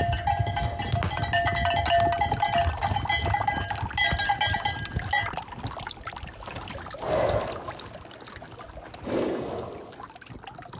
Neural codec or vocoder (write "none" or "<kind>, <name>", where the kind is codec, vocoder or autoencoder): none